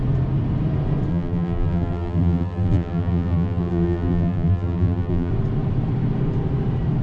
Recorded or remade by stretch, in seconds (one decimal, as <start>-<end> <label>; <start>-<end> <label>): 0.0-1.1 recorded; 1.1-5.3 remade; 5.3-7.0 recorded